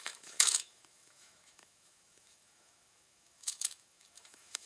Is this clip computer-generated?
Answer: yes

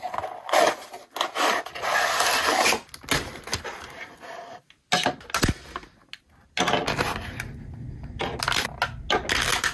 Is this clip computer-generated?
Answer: no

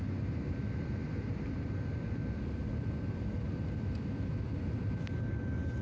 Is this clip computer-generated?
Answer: no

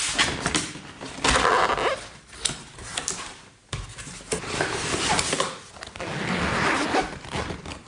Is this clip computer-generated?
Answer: no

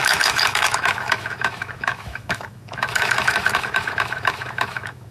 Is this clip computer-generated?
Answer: yes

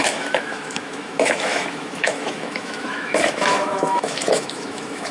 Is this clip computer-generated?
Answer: yes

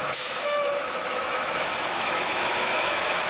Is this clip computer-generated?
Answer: yes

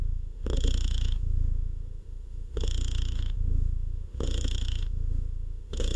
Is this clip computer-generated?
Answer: yes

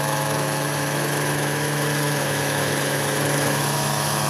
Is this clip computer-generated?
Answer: yes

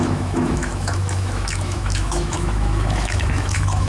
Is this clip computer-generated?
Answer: yes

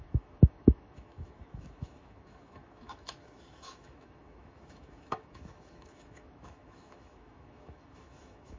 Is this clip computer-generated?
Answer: yes